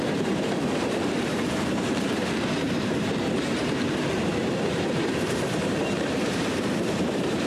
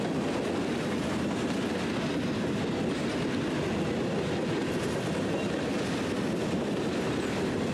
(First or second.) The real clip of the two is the second